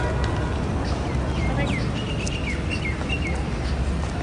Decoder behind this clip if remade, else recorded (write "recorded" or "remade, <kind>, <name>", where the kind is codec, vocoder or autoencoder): recorded